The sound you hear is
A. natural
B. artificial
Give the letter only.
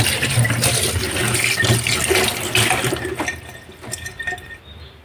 A